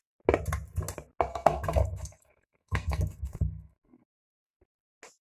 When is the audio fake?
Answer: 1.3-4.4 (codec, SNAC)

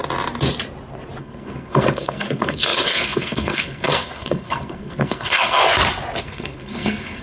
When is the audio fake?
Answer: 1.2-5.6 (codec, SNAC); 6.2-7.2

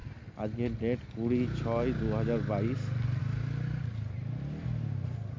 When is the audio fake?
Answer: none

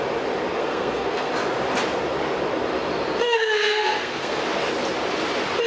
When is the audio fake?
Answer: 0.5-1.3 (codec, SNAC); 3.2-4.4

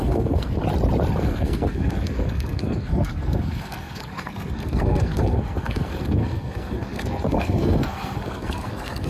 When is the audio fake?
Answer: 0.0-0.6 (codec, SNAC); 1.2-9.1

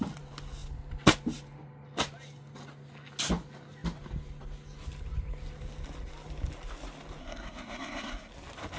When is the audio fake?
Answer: 7.2-8.3 (codec, SNAC)

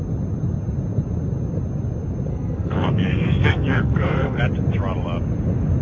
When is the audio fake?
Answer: 2.3-4.4 (codec, SNAC)

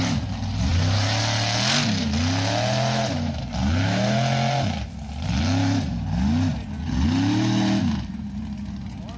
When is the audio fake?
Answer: none